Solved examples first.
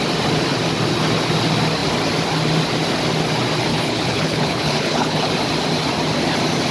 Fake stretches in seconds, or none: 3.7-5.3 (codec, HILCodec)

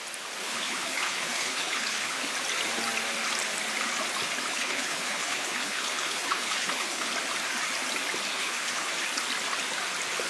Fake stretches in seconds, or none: 0.4-2.3 (codec, HILCodec); 4.5-7.1; 8.4-8.9

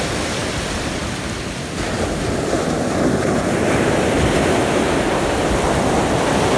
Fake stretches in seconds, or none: none

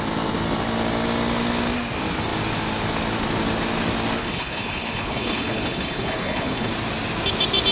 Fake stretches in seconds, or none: 4.2-6.7 (codec, HILCodec)